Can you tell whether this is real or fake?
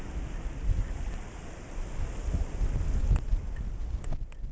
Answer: real